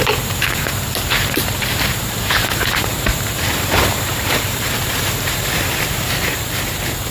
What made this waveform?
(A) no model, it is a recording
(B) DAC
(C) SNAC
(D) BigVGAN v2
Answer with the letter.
D